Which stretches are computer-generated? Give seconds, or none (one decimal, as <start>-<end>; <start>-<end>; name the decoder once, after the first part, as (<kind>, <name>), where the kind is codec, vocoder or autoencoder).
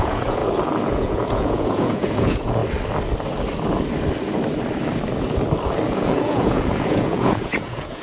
0.0-0.4 (vocoder, Vocos); 0.9-2.6; 5.9-8.0